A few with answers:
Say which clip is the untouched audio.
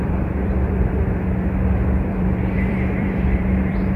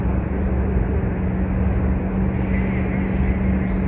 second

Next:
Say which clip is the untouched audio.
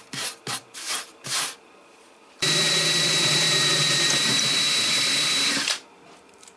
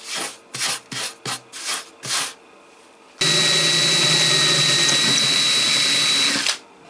second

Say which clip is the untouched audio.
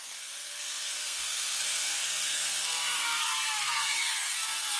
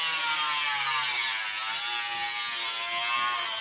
second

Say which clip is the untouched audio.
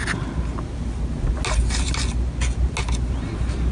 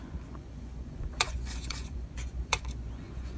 first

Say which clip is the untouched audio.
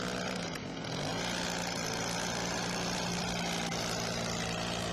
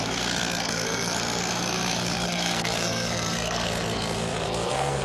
first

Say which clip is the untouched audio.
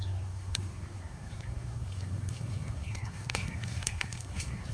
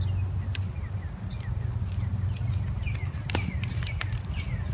second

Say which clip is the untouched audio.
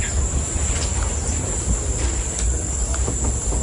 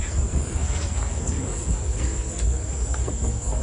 first